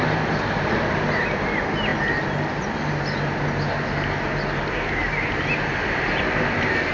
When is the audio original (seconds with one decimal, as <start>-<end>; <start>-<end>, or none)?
0.0-6.9